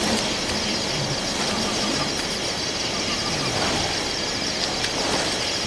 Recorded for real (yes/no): yes